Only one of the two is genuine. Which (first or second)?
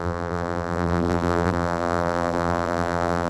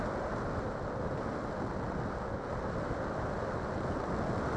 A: second